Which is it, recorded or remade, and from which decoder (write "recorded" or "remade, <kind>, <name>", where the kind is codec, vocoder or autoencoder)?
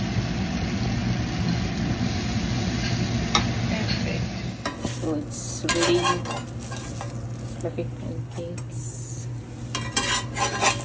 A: recorded